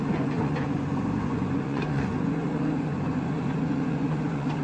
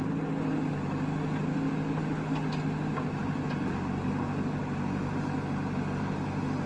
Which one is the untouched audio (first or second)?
second